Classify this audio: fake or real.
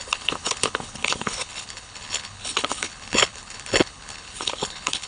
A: fake